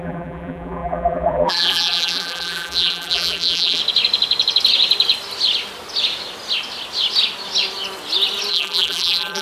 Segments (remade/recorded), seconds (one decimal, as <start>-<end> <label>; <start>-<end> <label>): 0.0-3.8 remade; 3.8-8.5 recorded; 8.5-9.4 remade